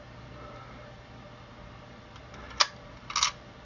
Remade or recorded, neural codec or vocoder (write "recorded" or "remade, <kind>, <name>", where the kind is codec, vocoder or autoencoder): recorded